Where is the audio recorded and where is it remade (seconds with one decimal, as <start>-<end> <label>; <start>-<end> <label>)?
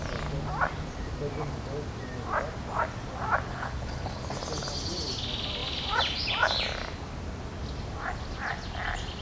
0.0-3.5 recorded; 3.5-4.2 remade; 4.2-9.2 recorded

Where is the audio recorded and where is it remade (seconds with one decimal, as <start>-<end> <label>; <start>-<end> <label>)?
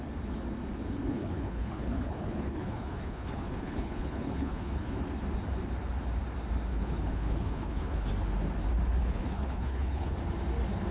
0.0-1.1 recorded; 1.1-5.0 remade; 5.0-6.7 recorded; 6.7-8.1 remade; 8.1-9.0 recorded; 9.0-10.2 remade; 10.2-10.9 recorded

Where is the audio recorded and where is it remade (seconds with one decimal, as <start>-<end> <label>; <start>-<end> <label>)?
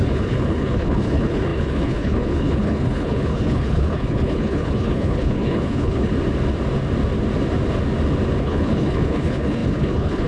0.0-6.1 remade; 6.1-8.4 recorded; 8.4-10.3 remade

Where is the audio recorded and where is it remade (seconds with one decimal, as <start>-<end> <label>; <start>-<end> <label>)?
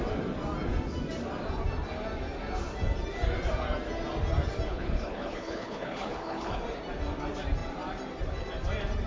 0.0-4.7 recorded; 4.7-6.6 remade; 6.6-9.1 recorded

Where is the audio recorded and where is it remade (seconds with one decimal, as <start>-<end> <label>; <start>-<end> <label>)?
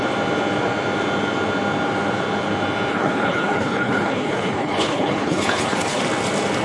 0.0-2.9 recorded; 2.9-6.0 remade; 6.0-6.6 recorded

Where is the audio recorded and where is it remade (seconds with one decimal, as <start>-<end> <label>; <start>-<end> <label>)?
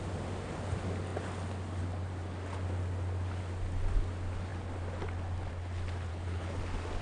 0.0-6.1 recorded; 6.1-6.6 remade; 6.6-7.0 recorded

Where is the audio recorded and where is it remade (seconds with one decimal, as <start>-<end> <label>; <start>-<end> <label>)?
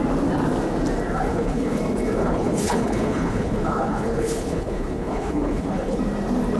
0.0-1.3 recorded; 1.3-1.8 remade; 1.8-2.2 recorded; 2.2-6.0 remade; 6.0-6.6 recorded